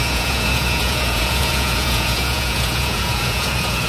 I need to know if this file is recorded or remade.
remade